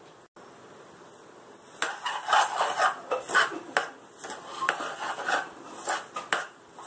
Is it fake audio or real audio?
real